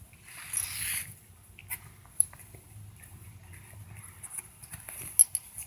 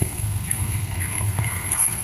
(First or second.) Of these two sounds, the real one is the first